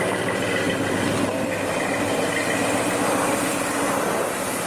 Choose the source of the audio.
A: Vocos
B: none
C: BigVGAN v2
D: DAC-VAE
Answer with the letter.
B